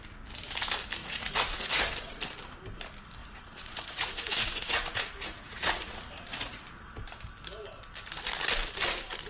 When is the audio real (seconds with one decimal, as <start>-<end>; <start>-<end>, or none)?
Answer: 0.0-1.0; 2.2-3.2; 6.6-9.3